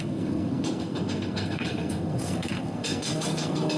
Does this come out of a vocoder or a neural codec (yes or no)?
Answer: yes